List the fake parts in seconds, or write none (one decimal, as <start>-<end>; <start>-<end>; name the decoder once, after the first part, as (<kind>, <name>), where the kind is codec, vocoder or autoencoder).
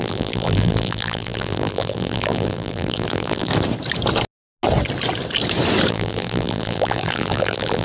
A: 0.0-3.5 (vocoder, BigVGAN v2); 5.9-7.8